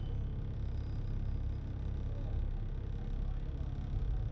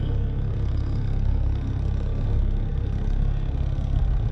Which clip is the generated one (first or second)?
second